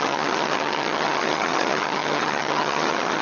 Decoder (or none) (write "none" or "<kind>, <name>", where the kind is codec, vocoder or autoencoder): vocoder, HiFi-GAN